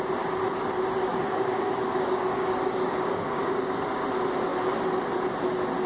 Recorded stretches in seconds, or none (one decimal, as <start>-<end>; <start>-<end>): 0.0-1.1; 4.0-5.9